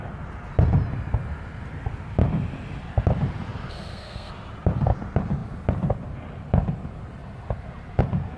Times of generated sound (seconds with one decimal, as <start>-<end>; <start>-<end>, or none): 3.7-4.3